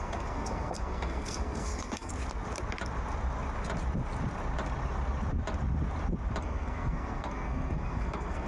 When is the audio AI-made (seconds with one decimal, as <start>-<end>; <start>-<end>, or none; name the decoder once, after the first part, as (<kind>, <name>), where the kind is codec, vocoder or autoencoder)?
0.0-2.1 (codec, SNAC); 6.4-8.5

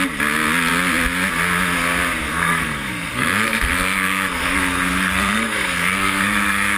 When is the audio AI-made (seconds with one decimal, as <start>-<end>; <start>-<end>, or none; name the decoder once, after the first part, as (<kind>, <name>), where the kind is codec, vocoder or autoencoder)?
2.3-6.8 (codec, SNAC)

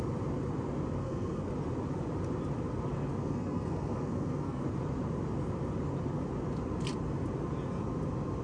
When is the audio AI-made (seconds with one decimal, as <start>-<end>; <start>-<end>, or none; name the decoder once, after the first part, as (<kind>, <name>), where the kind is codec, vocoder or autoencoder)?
1.0-1.5 (codec, SNAC); 3.2-4.6

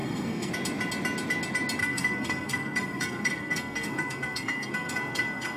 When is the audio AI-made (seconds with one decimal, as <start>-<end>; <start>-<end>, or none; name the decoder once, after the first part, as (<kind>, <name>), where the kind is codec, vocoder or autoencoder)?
0.0-0.5 (codec, SNAC); 1.8-5.6